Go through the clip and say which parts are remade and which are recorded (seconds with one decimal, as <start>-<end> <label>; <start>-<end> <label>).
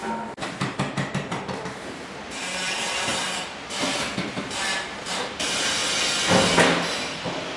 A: 0.0-1.1 recorded; 1.1-5.8 remade; 5.8-7.6 recorded